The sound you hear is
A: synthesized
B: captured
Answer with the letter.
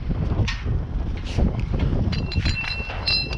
B